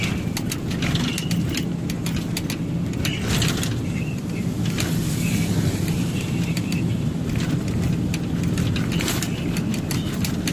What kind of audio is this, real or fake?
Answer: real